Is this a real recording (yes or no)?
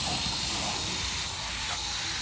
yes